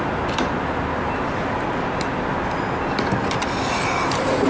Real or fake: real